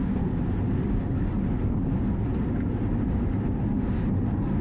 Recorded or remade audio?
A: recorded